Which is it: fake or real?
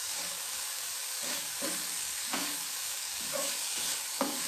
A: fake